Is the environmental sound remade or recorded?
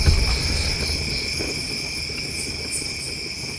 recorded